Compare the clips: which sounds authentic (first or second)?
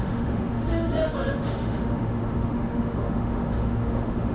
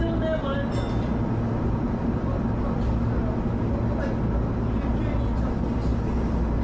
second